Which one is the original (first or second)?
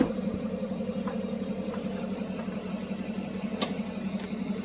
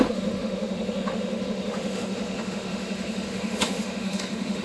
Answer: first